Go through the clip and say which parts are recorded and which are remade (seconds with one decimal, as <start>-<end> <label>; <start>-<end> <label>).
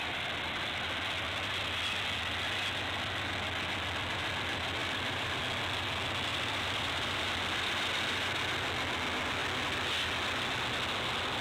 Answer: 0.0-4.8 recorded; 4.8-5.4 remade; 5.4-6.3 recorded; 6.3-7.4 remade; 7.4-11.4 recorded